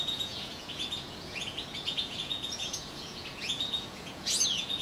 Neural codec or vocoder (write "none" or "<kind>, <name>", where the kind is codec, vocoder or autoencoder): vocoder, Vocos